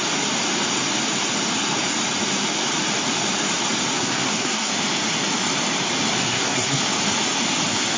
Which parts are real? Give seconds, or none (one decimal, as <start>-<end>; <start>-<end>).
0.0-4.0; 4.7-6.2; 6.8-8.0